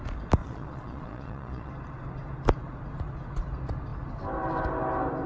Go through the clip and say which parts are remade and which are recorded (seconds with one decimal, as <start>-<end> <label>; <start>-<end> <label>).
0.0-0.4 recorded; 0.4-1.7 remade; 1.7-5.3 recorded